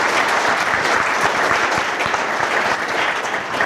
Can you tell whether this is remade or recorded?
recorded